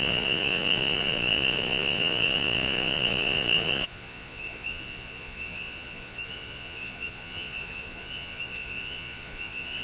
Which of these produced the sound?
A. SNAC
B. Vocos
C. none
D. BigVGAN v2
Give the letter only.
B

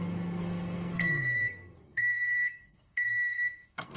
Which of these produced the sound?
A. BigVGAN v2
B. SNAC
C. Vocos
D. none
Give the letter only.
B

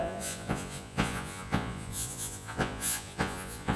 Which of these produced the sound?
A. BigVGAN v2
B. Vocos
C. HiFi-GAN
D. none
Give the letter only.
B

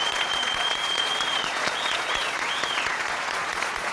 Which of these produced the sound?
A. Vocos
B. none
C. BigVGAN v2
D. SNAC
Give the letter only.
A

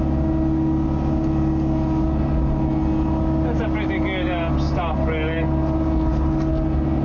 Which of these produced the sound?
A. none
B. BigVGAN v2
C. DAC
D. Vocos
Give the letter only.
A